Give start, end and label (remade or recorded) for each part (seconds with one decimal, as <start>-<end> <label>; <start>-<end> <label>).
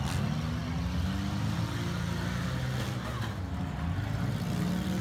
0.0-5.0 recorded